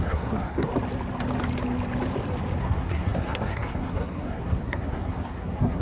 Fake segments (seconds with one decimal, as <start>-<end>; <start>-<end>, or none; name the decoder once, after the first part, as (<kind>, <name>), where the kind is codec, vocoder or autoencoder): 0.0-0.7 (codec, SNAC); 2.6-5.8